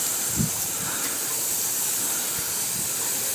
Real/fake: real